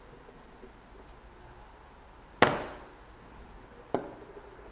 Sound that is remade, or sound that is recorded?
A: recorded